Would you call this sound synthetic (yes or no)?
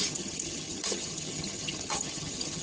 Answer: yes